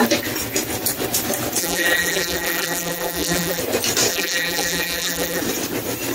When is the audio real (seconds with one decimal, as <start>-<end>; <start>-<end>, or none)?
0.0-1.6; 3.6-4.1; 5.4-6.1